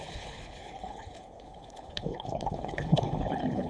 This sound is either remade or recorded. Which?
remade